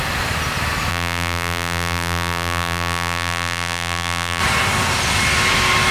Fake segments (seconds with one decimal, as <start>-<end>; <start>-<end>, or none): 0.9-4.4